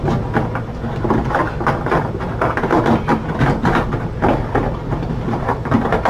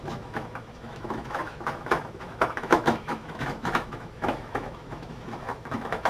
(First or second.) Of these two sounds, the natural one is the first